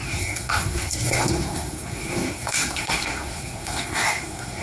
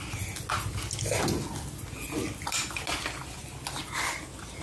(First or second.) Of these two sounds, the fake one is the first